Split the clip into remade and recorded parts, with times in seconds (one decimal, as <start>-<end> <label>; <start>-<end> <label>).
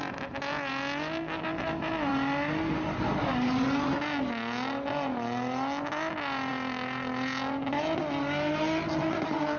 0.0-9.6 recorded